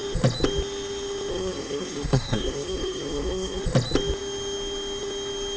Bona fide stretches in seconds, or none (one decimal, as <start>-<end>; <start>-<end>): 0.0-1.3; 3.6-5.6